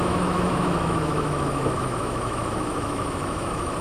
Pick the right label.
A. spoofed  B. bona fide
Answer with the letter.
A